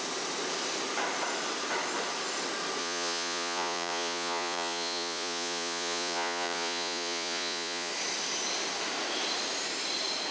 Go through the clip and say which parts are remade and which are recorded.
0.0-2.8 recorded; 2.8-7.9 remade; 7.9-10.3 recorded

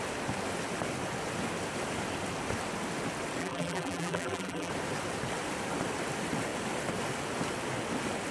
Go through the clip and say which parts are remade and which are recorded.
0.0-3.4 recorded; 3.4-4.7 remade; 4.7-8.3 recorded